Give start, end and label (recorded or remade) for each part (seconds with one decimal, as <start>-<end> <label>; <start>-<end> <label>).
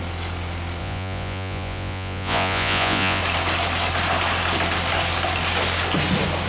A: 0.0-0.8 recorded; 0.8-3.2 remade; 3.2-6.5 recorded